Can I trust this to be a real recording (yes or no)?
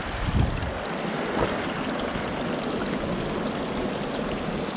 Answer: yes